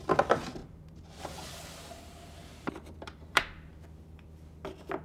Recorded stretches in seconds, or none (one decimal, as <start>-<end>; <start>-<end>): 0.0-0.6; 1.2-2.4; 3.7-5.0